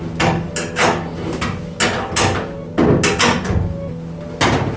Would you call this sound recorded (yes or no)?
yes